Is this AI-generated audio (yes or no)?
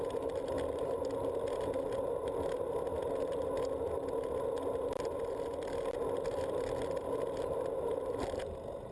no